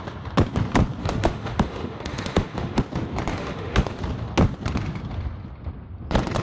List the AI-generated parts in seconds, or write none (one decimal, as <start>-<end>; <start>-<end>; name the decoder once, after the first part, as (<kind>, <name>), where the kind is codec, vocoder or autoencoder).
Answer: 1.0-2.8 (autoencoder, DAC-VAE); 3.3-4.0